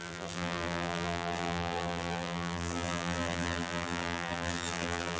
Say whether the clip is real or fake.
fake